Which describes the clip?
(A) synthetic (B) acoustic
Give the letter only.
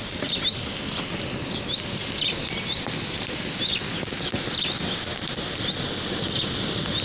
B